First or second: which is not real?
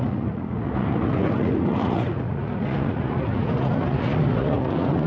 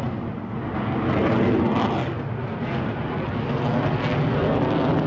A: first